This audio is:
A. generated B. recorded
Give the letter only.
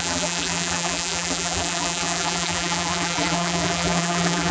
A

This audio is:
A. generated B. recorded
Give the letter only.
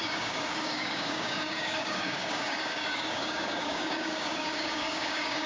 A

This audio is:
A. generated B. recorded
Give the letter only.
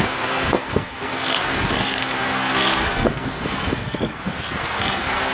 A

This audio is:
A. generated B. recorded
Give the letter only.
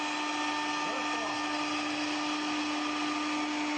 B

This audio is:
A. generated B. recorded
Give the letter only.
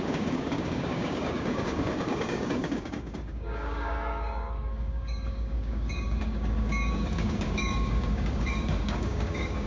A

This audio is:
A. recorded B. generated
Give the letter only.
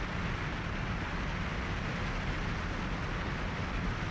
A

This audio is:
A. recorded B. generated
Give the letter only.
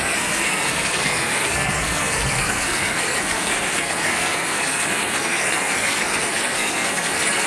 B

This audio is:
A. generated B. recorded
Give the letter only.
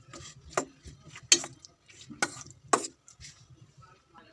B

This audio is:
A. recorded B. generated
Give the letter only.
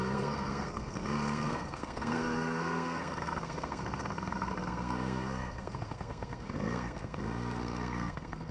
B